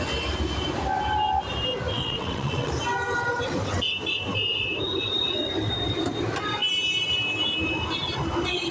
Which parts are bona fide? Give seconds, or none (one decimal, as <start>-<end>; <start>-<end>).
0.0-1.9; 2.7-8.7